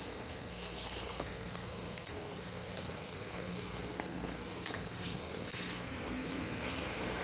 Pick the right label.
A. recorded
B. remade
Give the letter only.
B